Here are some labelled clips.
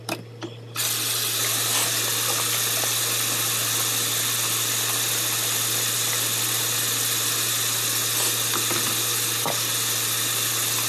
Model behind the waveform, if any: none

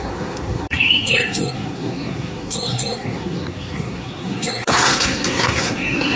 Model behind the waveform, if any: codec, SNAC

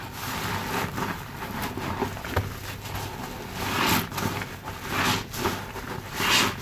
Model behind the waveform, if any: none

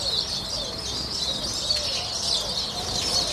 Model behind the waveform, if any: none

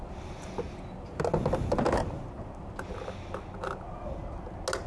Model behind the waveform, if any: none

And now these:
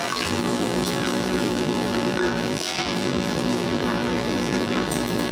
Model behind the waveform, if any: vocoder, BigVGAN v2